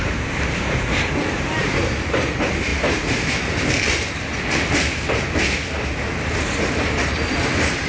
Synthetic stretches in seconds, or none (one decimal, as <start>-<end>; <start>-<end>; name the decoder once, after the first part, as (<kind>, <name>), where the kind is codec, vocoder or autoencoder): 0.0-4.3 (vocoder, BigVGAN v2); 6.4-7.9